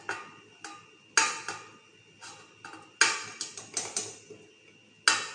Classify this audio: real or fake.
real